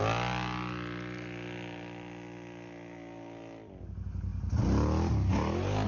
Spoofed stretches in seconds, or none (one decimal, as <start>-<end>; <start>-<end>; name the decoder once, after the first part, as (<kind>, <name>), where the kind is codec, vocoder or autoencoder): none